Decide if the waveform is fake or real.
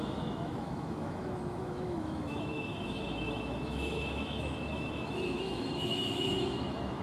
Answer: fake